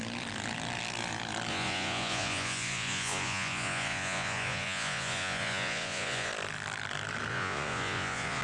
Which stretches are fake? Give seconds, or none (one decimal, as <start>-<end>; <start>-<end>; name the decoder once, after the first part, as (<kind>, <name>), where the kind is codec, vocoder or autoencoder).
1.5-6.3 (vocoder, Vocos); 7.3-8.4